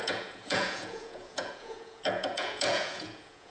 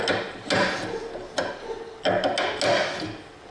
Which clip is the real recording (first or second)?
second